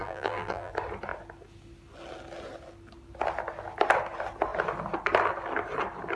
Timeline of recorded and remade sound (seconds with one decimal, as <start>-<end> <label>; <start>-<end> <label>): 0.0-0.7 remade; 0.7-6.2 recorded